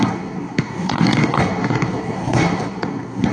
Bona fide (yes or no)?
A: no